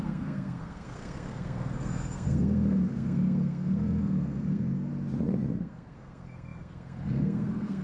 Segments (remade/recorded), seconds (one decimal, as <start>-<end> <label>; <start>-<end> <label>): 0.0-4.9 remade; 4.9-5.6 recorded; 5.6-7.8 remade